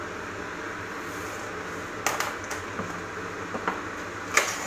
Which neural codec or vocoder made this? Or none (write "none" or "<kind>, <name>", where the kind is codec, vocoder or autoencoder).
none